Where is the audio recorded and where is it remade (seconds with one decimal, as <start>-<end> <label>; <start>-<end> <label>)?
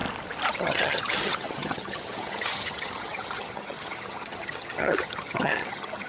0.0-0.5 recorded; 0.5-6.1 remade